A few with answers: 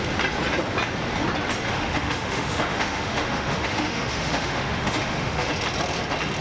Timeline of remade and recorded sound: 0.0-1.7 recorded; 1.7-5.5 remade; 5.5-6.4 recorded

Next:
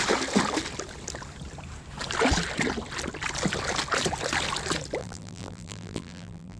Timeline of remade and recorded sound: 0.0-5.0 recorded; 5.0-6.6 remade